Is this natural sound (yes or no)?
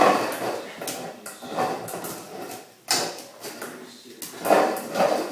yes